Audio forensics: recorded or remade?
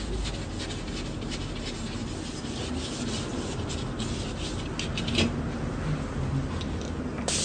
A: recorded